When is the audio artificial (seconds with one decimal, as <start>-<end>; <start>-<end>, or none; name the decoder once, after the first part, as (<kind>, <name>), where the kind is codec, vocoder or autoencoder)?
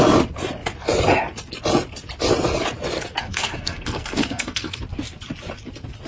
3.2-4.8 (codec, SNAC)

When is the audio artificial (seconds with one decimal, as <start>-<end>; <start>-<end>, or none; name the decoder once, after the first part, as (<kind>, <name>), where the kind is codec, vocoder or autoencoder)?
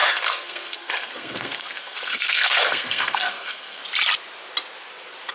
0.0-3.8 (codec, SNAC)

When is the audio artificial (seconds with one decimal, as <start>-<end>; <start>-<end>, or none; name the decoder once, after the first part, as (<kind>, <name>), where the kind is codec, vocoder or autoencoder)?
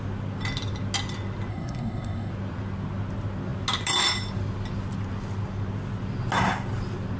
1.5-2.3 (codec, SNAC)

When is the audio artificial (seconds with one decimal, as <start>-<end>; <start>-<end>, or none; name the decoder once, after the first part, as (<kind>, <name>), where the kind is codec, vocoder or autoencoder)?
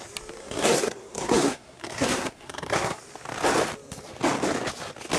0.4-3.0 (codec, SNAC)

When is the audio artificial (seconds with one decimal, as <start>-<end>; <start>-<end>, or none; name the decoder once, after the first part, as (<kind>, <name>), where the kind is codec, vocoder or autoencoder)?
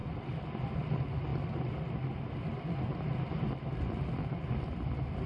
none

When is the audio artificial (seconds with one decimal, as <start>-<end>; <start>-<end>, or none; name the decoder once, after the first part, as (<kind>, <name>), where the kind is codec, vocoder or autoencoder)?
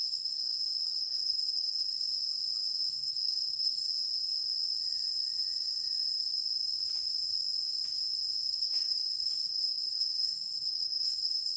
0.0-0.4 (codec, SNAC); 1.0-2.1; 2.9-3.9; 8.5-11.6